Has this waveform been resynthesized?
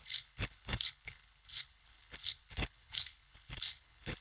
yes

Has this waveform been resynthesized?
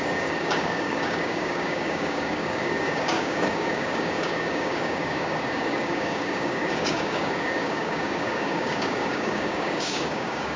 yes